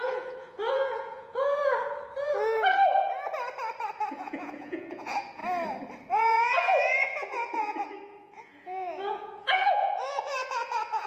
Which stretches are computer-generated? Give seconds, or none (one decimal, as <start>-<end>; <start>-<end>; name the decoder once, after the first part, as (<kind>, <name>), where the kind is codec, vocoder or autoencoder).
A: 0.0-1.6 (vocoder, Vocos); 4.1-5.4; 6.0-11.1